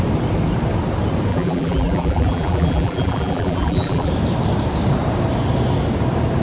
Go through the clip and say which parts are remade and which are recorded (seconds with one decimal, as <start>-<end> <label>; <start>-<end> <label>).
0.0-1.3 recorded; 1.3-4.1 remade; 4.1-6.4 recorded